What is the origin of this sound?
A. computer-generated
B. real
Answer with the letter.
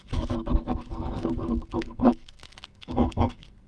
A